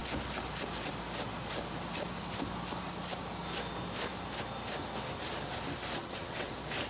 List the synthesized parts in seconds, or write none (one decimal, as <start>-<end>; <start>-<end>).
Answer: 6.0-6.5